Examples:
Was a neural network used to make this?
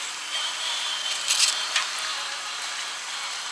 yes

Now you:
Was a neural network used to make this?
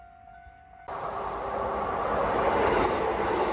no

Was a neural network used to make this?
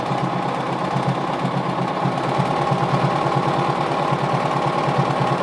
no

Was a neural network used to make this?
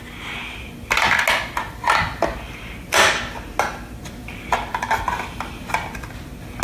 no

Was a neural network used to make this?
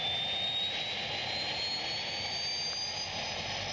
no